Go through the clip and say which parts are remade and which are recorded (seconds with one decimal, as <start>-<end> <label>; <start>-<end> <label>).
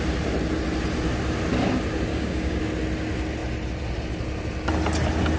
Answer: 0.0-2.1 recorded; 2.1-2.6 remade; 2.6-5.4 recorded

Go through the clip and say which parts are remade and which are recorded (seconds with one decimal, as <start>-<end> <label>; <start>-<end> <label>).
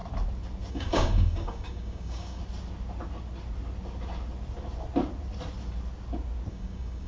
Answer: 0.0-0.7 recorded; 0.7-2.4 remade; 2.4-6.5 recorded; 6.5-7.1 remade